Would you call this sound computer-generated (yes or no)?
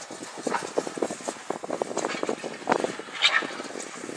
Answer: no